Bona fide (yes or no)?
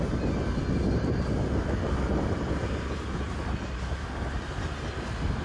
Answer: yes